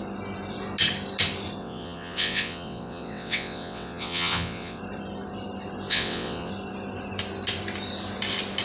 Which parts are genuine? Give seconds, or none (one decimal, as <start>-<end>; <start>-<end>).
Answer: 0.0-1.6; 4.8-5.9; 6.5-8.6